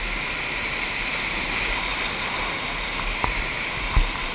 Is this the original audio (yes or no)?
yes